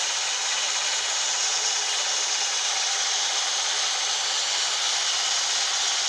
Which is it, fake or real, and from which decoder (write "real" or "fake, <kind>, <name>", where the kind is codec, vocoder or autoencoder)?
real